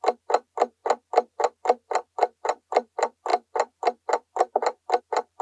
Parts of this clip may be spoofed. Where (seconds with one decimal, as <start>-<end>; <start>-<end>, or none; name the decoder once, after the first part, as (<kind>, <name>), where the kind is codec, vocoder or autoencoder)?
none